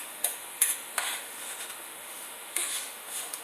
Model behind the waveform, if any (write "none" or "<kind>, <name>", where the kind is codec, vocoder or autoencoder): autoencoder, DAC-VAE